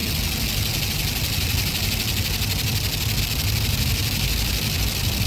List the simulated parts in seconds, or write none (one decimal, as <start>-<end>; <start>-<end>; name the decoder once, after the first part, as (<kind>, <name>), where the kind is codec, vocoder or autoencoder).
none